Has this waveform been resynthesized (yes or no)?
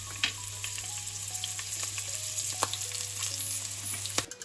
no